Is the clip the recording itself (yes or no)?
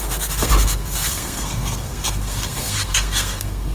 no